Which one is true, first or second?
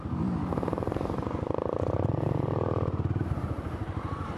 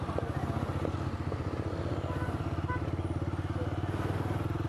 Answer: second